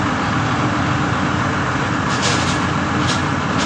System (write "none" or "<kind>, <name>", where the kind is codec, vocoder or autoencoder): none